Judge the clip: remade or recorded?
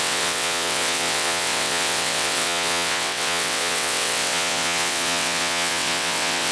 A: remade